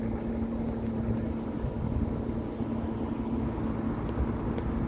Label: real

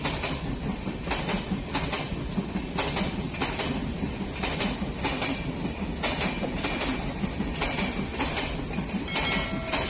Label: real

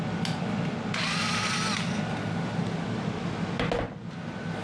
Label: real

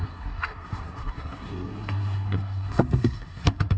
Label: fake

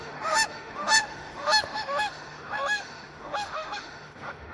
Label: fake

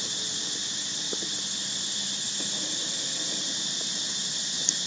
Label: real